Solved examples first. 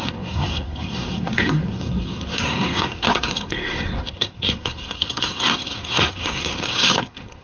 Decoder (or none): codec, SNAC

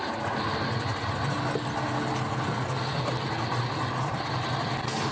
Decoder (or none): none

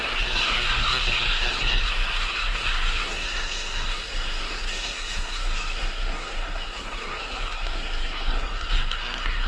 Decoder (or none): codec, SNAC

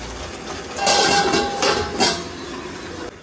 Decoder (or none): none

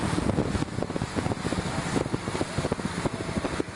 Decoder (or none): none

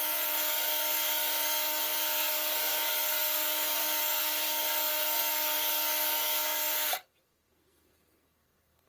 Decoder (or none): codec, SNAC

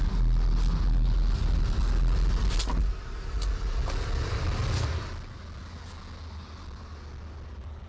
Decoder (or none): none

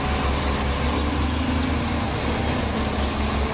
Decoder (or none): none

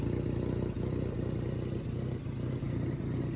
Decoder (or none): none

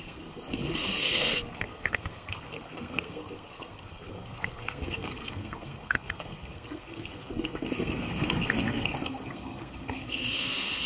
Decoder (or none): codec, SNAC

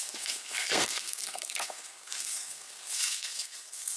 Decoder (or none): codec, SNAC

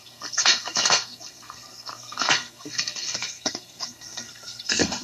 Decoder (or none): codec, SNAC